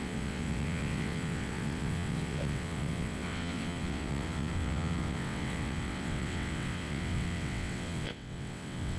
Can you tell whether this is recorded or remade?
remade